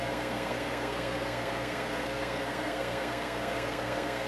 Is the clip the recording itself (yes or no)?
no